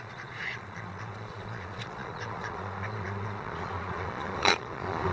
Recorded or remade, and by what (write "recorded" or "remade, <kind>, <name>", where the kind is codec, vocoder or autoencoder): remade, vocoder, Vocos